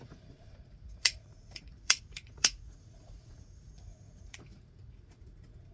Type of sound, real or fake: fake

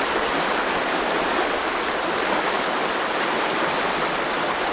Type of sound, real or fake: real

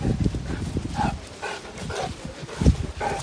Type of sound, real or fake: real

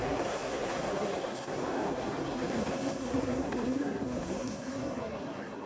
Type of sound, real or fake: fake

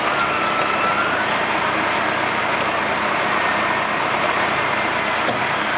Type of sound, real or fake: real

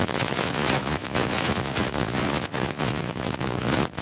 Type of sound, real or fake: fake